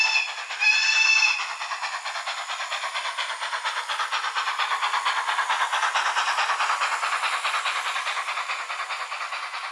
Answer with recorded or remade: recorded